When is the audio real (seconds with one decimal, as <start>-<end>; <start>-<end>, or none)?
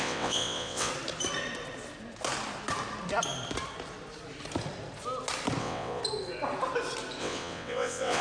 0.9-5.6; 6.0-7.2